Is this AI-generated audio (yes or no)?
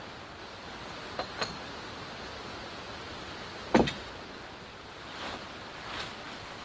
no